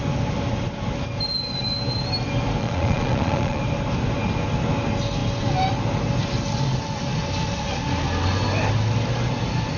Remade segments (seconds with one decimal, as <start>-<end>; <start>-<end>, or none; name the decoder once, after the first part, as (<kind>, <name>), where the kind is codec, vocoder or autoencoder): 2.6-3.6 (vocoder, Vocos)